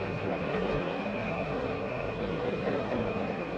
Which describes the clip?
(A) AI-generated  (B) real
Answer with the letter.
A